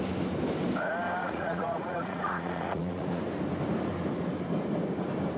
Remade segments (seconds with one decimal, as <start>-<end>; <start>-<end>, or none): 1.2-3.2